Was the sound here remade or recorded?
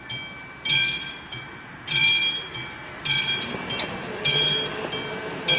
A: recorded